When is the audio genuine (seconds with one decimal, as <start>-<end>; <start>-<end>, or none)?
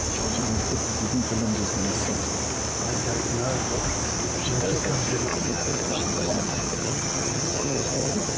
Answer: 0.0-5.3